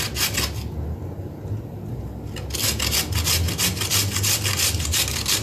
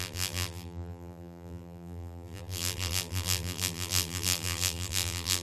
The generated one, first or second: second